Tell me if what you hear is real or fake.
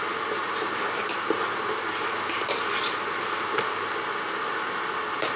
real